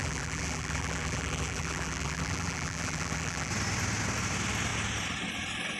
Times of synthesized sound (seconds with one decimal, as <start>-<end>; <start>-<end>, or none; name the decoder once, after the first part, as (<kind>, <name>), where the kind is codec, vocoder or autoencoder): 0.0-3.5 (vocoder, BigVGAN v2)